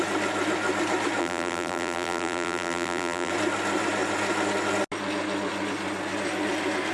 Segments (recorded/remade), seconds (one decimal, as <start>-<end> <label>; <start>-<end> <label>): 0.0-1.2 recorded; 1.2-3.3 remade; 3.3-6.9 recorded